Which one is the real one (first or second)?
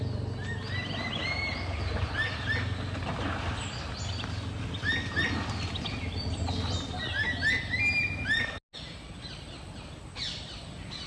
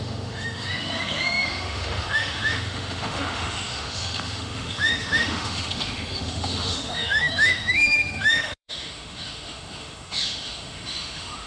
first